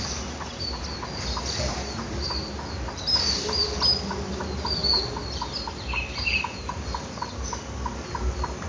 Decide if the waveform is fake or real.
real